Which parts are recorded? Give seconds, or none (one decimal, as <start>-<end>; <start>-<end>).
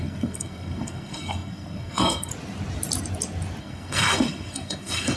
2.3-3.6